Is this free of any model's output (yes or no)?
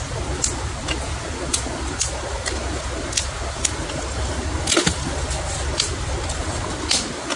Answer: yes